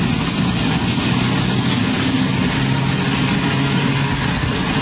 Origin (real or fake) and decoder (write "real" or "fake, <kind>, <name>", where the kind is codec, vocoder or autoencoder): real